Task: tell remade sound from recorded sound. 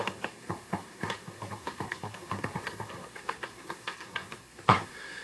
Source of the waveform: remade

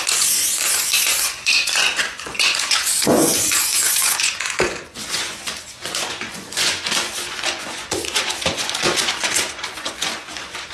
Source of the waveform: remade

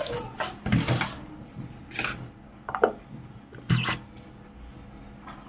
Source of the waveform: recorded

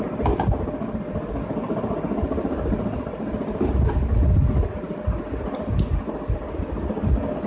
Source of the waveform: recorded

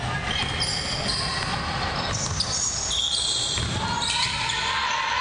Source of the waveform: recorded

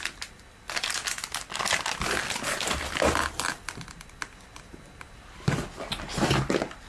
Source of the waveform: recorded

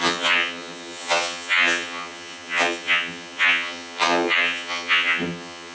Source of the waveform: remade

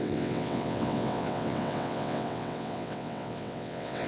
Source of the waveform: remade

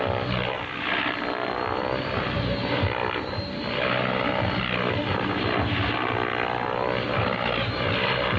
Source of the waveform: recorded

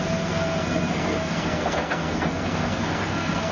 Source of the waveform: remade